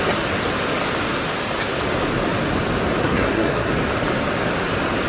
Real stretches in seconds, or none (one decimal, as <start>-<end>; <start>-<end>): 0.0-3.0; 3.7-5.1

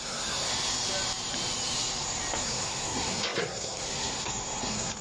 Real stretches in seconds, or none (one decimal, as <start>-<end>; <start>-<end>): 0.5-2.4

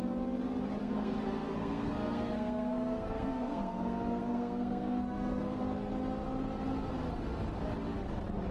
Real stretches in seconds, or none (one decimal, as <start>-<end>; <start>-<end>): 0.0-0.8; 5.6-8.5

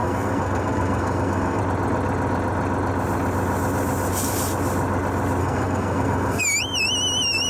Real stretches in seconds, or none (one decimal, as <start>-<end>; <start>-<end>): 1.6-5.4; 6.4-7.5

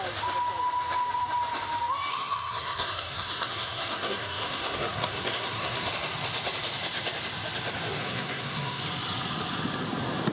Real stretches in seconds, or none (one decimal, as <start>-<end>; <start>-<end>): 0.0-2.1; 5.9-8.0; 8.8-10.3